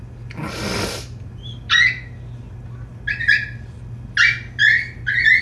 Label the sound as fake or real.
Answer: real